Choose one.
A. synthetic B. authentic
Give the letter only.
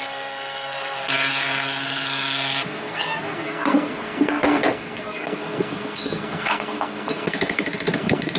A